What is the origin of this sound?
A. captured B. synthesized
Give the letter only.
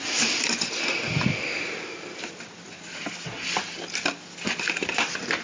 A